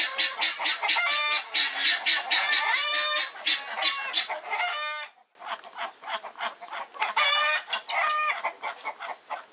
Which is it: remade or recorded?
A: recorded